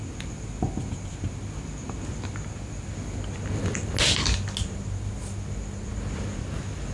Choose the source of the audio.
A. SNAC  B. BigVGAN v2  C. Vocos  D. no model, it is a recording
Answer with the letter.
D